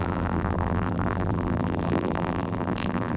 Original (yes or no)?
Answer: no